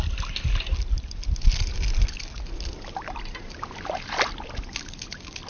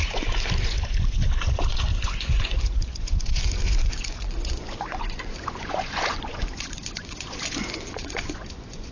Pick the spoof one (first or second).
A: second